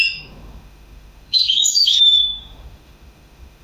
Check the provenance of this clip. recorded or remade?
remade